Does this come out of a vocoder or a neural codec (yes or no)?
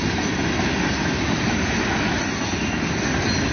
no